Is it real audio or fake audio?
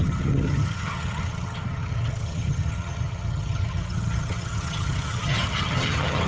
fake